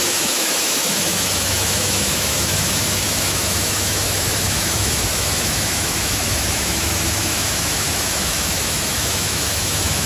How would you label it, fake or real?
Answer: fake